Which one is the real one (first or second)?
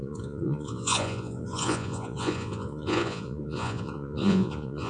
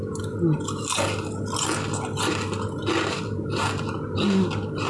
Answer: second